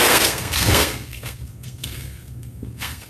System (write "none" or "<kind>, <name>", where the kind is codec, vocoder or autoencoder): codec, SNAC